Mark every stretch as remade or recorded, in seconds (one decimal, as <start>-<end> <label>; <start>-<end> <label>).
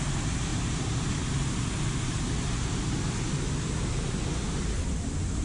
0.0-0.5 recorded; 0.5-3.7 remade; 3.7-5.4 recorded